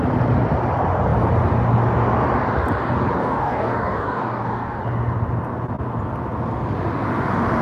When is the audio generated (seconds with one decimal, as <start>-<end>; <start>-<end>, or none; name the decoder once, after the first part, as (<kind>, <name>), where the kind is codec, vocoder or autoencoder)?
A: 3.2-4.8 (codec, DAC)